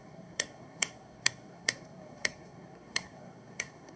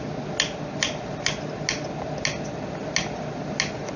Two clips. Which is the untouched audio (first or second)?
second